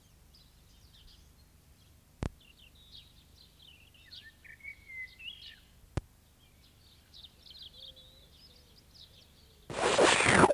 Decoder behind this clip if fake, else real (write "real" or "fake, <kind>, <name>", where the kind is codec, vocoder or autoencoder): real